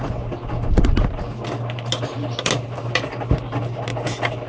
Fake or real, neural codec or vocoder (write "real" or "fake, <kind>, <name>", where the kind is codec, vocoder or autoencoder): real